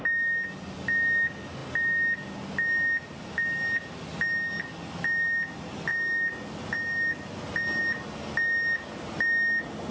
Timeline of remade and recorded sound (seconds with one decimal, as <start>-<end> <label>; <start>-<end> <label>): 0.0-9.9 recorded